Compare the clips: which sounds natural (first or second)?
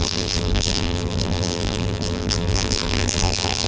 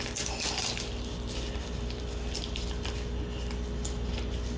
second